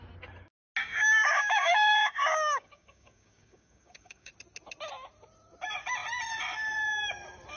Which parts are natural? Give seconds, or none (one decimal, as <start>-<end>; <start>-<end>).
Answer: 0.0-0.8; 4.3-7.6